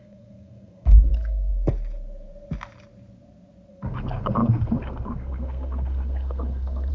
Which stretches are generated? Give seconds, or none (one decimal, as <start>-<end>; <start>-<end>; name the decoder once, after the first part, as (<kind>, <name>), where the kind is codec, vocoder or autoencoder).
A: 0.0-1.5 (codec, SNAC); 3.7-6.9